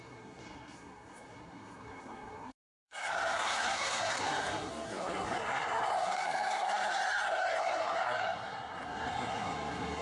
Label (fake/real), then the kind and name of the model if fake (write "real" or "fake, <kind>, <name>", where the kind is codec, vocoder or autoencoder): fake, codec, SNAC